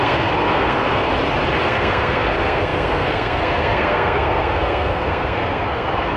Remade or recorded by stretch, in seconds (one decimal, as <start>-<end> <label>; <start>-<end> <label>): 0.0-1.1 remade; 1.1-1.6 recorded; 1.6-6.2 remade